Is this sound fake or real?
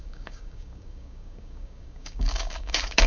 fake